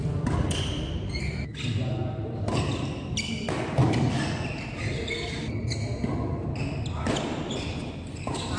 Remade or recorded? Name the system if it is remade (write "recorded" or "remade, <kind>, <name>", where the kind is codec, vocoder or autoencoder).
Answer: recorded